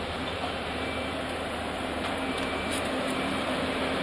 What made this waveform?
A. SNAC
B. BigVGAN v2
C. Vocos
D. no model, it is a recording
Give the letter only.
B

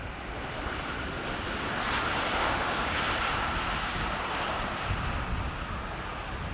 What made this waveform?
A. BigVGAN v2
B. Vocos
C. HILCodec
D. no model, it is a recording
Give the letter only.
D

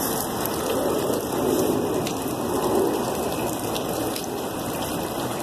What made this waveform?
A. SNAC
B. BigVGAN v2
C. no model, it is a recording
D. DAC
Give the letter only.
C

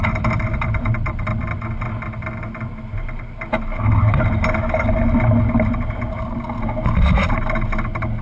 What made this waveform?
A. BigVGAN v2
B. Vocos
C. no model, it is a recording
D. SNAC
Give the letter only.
C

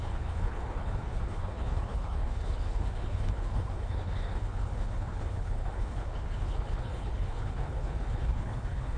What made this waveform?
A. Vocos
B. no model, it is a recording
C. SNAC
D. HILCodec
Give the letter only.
D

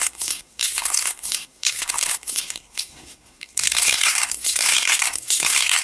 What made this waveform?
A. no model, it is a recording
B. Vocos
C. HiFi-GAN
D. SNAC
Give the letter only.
D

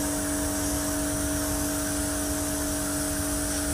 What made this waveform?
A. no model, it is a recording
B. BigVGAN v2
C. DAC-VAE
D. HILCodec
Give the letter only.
A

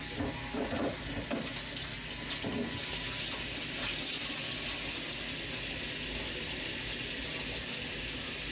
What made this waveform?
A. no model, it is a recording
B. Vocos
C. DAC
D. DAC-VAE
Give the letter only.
A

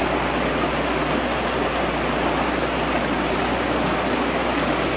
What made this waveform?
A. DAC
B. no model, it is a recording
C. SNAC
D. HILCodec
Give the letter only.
B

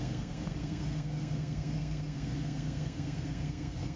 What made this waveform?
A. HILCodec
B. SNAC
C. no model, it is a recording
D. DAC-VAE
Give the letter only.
B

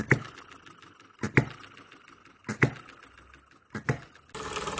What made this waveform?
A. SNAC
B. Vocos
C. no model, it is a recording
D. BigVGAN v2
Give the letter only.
C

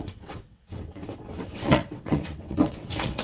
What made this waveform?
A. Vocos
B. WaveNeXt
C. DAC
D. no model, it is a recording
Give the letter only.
B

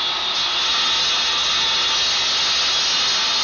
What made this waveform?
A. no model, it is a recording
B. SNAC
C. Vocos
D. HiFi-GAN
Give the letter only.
A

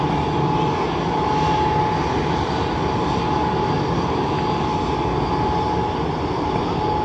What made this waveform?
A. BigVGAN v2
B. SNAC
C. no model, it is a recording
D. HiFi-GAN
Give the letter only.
C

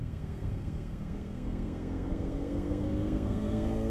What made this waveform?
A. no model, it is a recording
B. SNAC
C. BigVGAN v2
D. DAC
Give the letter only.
B